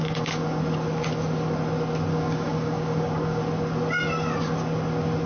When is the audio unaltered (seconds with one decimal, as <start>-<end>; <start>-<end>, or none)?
0.6-2.1; 3.4-5.3